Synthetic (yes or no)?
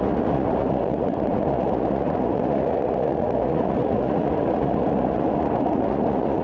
yes